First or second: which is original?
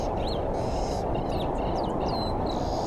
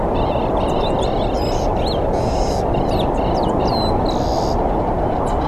second